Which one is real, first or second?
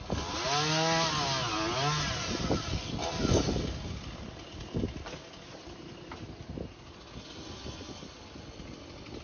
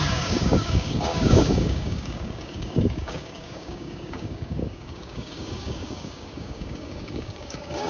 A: first